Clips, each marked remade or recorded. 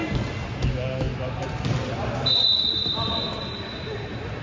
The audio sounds recorded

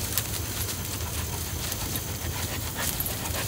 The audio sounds recorded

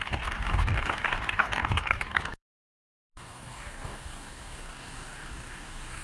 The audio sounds remade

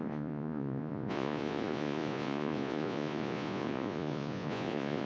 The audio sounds remade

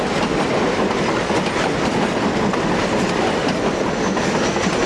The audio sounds recorded